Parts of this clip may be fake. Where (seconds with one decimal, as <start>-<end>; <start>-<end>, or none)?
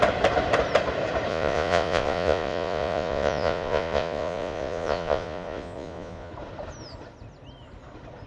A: 1.3-6.3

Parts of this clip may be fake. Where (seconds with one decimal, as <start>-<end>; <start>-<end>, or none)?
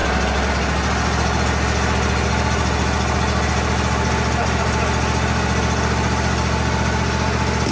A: none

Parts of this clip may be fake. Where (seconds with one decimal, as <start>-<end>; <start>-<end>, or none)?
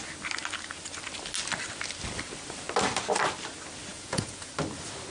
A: 3.9-4.5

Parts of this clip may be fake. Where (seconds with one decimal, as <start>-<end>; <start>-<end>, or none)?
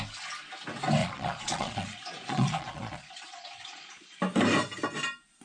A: 1.0-4.2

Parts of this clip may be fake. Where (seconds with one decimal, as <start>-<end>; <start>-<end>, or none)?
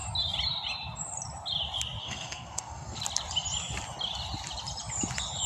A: 2.0-3.0